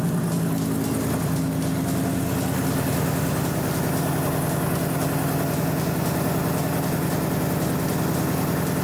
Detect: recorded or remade recorded